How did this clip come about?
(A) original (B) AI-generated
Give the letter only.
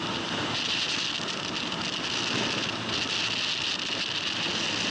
A